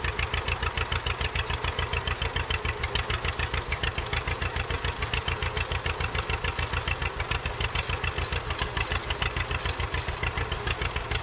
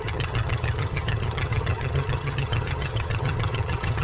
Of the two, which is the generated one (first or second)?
second